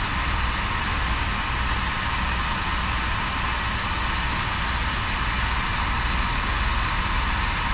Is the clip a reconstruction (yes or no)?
no